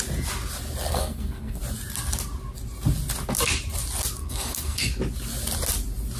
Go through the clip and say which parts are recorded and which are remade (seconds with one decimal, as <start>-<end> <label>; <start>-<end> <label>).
0.0-0.9 recorded; 0.9-1.6 remade; 1.6-4.2 recorded; 4.2-4.9 remade; 4.9-6.2 recorded